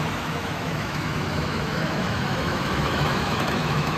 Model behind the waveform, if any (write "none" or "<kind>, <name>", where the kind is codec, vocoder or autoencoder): autoencoder, DAC-VAE